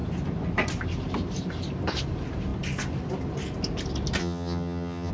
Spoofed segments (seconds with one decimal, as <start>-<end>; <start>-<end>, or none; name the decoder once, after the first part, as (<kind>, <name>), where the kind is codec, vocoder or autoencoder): 4.2-5.1 (vocoder, HiFi-GAN)